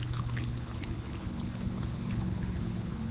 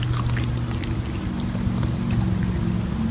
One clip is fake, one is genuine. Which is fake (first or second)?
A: first